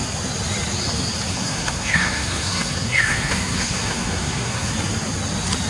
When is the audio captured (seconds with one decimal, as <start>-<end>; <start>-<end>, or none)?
0.0-1.3; 4.7-5.7